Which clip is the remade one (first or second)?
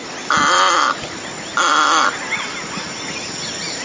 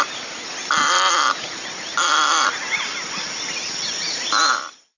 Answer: second